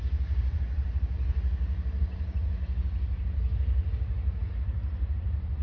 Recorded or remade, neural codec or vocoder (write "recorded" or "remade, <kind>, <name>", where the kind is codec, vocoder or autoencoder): recorded